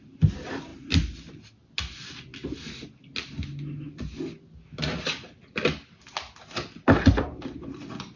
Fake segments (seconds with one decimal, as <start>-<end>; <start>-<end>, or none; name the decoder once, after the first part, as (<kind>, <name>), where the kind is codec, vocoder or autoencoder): none